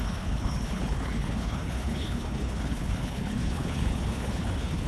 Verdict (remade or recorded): remade